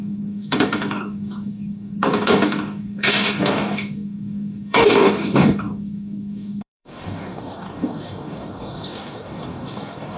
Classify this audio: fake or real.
fake